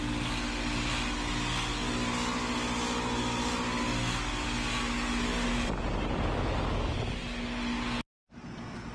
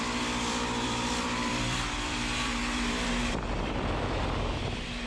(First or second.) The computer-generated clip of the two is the second